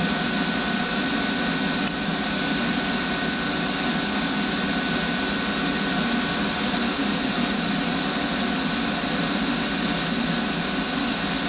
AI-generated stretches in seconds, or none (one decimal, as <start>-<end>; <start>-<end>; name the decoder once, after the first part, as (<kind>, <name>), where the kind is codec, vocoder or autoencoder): none